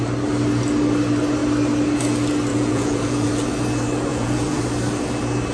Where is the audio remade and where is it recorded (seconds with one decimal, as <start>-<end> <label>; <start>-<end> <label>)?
0.0-2.5 recorded; 2.5-3.3 remade; 3.3-4.1 recorded; 4.1-4.6 remade; 4.6-5.5 recorded